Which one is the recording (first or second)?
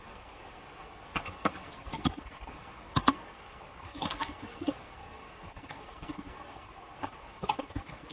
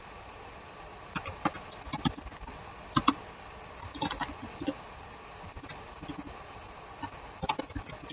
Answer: second